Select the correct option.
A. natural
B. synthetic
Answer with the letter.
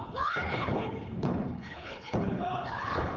B